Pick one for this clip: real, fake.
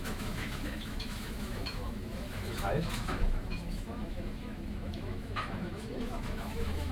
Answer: fake